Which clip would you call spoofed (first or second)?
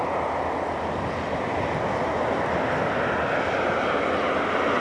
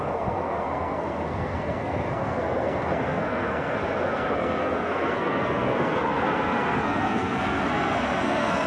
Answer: second